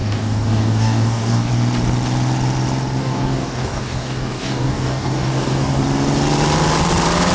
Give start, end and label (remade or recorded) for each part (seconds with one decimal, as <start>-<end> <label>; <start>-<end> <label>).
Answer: 0.0-1.5 remade; 1.5-3.0 recorded; 3.0-5.8 remade; 5.8-7.3 recorded